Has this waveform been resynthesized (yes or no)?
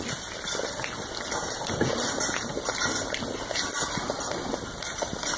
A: no